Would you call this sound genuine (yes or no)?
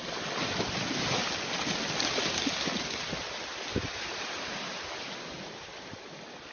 yes